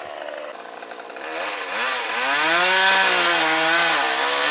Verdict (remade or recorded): recorded